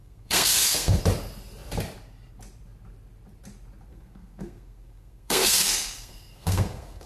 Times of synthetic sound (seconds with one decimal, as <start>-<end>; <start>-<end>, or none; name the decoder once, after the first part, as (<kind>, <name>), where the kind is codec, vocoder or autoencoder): 0.0-1.0 (codec, SNAC); 3.9-7.1